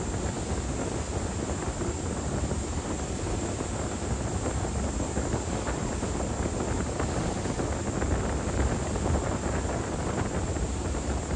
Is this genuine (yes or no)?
yes